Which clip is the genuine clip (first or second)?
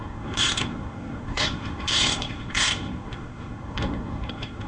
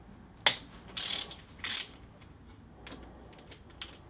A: second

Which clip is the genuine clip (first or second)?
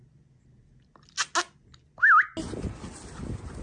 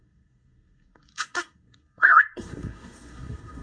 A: first